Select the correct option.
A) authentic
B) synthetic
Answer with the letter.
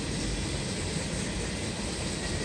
A